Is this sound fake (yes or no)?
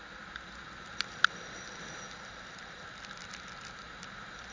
no